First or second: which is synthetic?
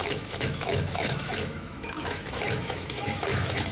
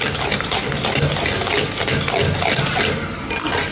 first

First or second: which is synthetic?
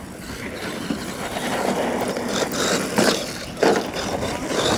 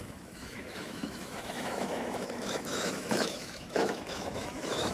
second